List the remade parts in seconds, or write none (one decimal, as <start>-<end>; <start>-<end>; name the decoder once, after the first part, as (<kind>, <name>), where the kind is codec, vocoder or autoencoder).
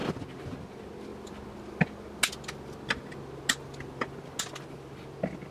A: none